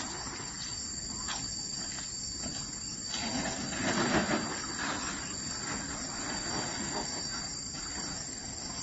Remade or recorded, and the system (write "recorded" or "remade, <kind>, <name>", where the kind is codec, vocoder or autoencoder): recorded